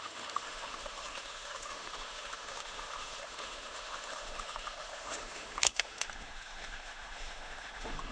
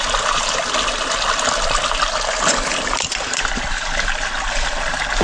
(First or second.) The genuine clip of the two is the second